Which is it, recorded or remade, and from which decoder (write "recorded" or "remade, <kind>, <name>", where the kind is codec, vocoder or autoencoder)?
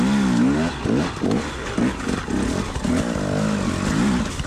recorded